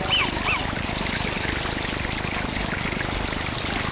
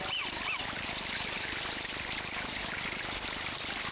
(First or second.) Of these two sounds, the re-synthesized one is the second